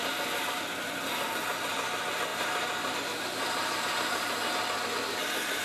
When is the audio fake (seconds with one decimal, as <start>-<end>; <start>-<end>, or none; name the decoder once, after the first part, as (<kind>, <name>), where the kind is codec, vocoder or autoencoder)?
2.3-4.5 (vocoder, BigVGAN v2)

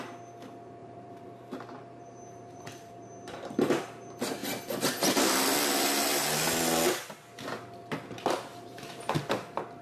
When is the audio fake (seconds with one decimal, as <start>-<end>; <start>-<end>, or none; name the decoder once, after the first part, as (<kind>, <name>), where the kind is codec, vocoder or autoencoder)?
0.8-3.5 (vocoder, BigVGAN v2); 8.5-9.1